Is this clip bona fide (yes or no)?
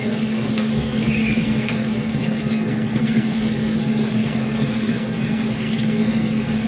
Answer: no